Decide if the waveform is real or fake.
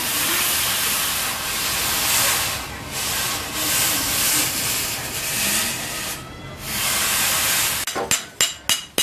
real